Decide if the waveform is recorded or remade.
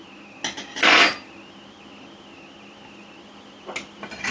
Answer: recorded